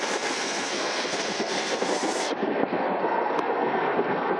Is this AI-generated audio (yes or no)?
yes